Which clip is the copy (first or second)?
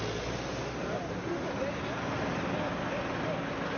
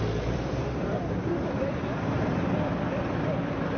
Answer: second